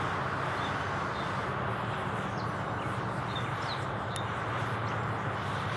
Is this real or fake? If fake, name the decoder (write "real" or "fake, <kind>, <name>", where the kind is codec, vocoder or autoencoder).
real